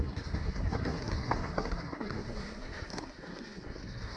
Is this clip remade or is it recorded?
remade